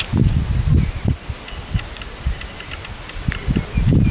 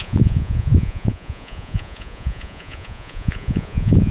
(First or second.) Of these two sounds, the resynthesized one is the second